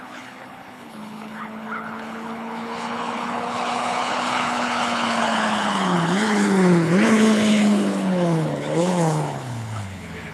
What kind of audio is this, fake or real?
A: fake